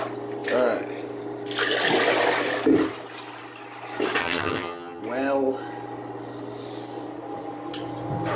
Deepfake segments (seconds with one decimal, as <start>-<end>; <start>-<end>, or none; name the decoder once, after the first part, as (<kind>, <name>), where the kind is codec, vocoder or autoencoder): 4.2-5.0 (vocoder, HiFi-GAN)